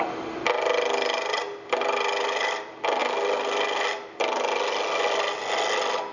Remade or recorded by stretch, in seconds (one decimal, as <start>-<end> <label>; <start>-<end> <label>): 0.0-6.1 recorded